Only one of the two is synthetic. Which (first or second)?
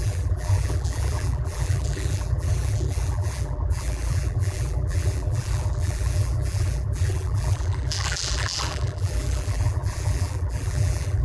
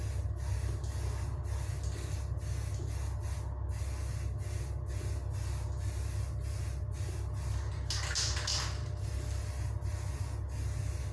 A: first